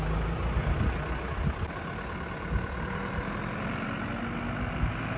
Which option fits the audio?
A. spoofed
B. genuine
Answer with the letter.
B